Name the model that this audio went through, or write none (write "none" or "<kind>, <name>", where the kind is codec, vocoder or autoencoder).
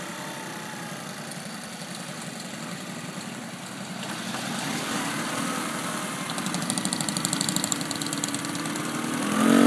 none